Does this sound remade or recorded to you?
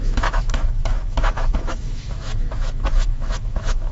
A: remade